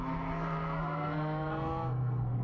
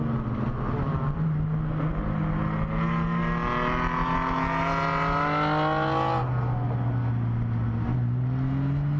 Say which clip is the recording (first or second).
second